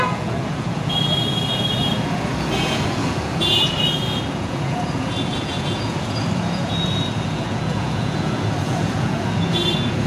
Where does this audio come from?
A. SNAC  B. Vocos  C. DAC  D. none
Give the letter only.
B